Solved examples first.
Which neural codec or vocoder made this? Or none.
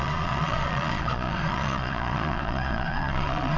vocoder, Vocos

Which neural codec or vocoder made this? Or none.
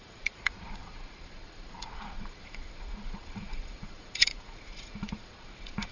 vocoder, Vocos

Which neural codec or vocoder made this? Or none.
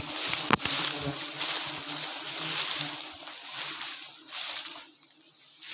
none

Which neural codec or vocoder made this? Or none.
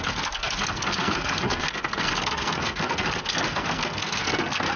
codec, SNAC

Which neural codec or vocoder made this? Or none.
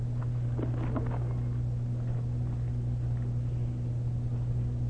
none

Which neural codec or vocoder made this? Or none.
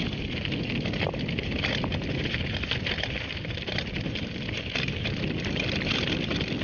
none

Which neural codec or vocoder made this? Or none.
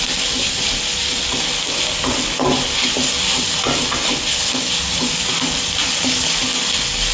none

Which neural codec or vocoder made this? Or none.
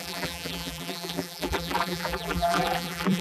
vocoder, BigVGAN v2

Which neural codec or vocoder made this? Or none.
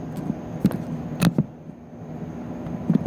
none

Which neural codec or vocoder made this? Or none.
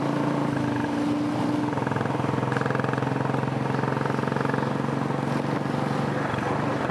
none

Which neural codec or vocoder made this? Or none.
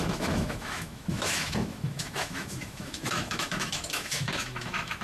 autoencoder, DAC-VAE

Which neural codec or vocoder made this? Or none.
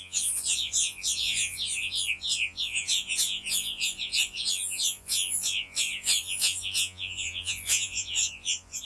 vocoder, Vocos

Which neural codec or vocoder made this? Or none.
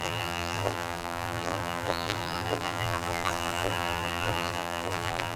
vocoder, BigVGAN v2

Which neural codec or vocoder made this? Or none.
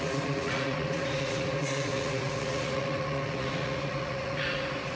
vocoder, Vocos